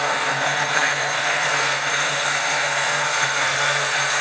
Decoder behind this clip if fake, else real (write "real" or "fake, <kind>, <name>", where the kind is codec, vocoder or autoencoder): fake, codec, SNAC